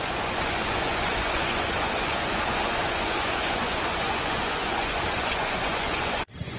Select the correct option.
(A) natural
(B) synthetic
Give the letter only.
B